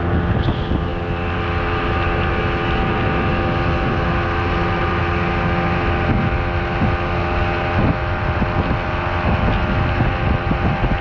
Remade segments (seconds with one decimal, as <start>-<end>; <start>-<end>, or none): none